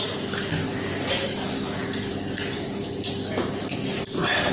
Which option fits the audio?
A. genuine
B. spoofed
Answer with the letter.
B